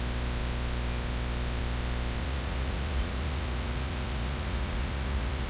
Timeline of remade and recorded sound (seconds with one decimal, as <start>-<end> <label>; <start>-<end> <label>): 0.0-2.2 recorded; 2.2-5.5 remade